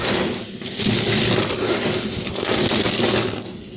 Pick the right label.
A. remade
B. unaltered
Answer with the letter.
B